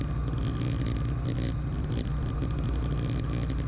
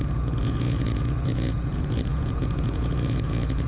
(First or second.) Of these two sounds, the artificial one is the second